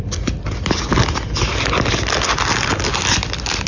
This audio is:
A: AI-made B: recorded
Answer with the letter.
B